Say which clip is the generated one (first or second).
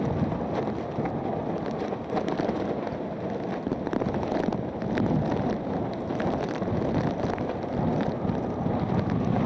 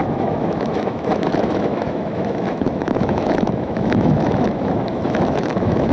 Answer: second